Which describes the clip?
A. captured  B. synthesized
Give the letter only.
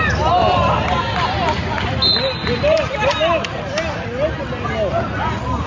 A